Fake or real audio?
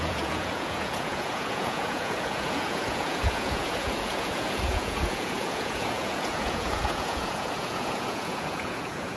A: fake